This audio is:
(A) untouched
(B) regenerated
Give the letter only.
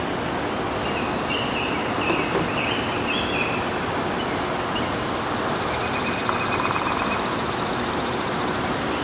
A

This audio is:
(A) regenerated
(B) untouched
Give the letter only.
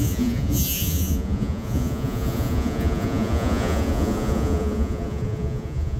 A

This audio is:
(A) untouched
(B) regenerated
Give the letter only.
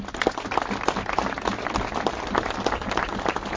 A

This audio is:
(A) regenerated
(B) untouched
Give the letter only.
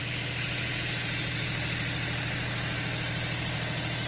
B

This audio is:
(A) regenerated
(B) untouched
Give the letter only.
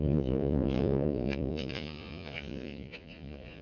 A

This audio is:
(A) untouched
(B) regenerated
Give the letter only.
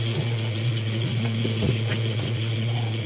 B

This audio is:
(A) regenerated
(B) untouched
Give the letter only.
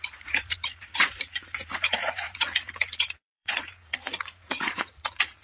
A